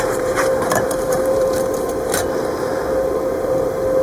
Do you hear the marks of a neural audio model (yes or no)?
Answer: yes